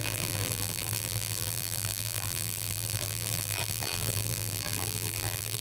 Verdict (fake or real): fake